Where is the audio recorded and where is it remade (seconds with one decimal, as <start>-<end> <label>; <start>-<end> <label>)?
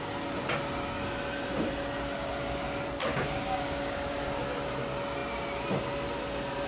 0.0-3.0 recorded; 3.0-4.4 remade; 4.4-6.7 recorded